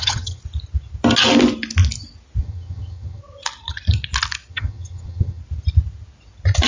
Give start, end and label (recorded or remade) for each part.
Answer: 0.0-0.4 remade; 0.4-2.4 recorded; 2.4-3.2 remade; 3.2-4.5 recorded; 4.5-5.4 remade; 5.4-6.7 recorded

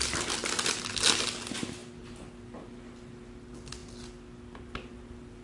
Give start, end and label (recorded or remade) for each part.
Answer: 0.0-0.4 remade; 0.4-0.9 recorded; 0.9-1.8 remade; 1.8-2.4 recorded; 2.4-3.8 remade; 3.8-4.9 recorded; 4.9-5.4 remade

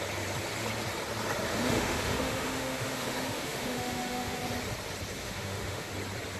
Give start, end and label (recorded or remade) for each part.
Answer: 0.0-1.5 recorded; 1.5-4.4 remade; 4.4-5.2 recorded; 5.2-5.9 remade; 5.9-6.4 recorded

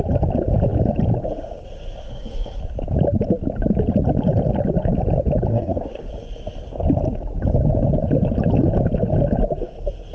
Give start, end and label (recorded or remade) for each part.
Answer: 0.0-2.0 recorded; 2.0-2.6 remade; 2.6-5.5 recorded; 5.5-6.1 remade; 6.1-10.1 recorded

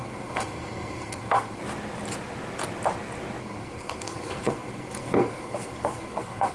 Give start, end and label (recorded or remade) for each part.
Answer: 0.0-1.6 remade; 1.6-3.4 recorded; 3.4-6.5 remade